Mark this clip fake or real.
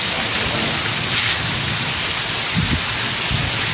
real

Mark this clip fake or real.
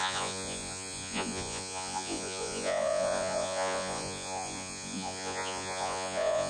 fake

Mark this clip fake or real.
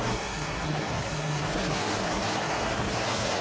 fake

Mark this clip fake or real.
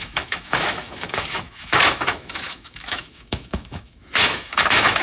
fake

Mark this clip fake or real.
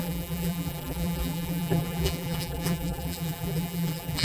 fake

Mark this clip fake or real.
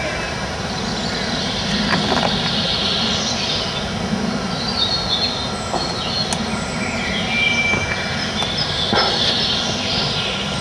real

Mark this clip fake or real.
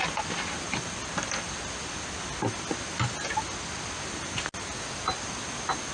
real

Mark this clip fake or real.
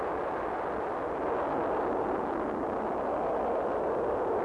real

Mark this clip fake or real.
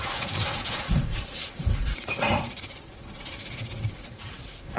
fake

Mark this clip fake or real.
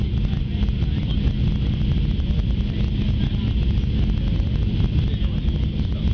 real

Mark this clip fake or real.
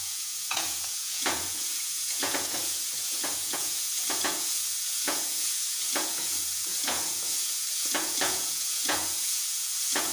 fake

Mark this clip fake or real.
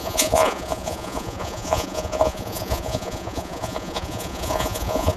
fake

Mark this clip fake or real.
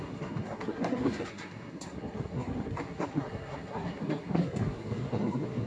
fake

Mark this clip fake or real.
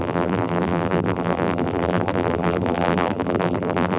fake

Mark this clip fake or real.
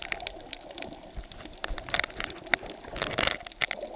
real